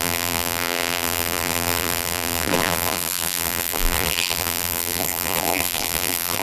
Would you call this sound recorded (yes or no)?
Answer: no